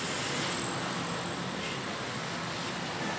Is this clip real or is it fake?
real